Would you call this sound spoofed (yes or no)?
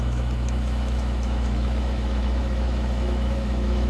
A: yes